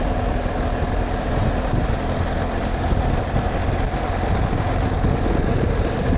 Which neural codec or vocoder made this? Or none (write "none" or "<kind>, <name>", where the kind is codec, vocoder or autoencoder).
none